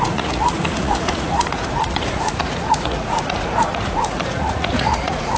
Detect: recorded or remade remade